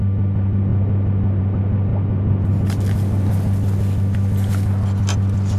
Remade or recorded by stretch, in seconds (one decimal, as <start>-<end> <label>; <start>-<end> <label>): 0.0-5.6 recorded